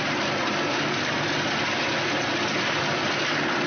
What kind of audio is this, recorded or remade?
recorded